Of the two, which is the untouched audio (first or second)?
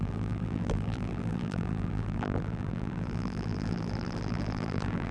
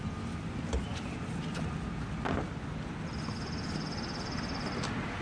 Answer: second